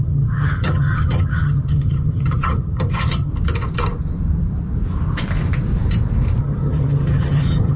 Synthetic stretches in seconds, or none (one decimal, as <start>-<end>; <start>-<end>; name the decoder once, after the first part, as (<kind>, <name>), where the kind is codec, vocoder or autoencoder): 0.0-3.3 (vocoder, HiFi-GAN); 6.4-7.8